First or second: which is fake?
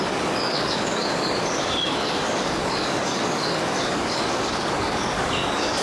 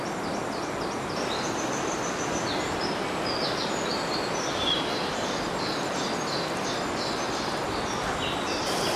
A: first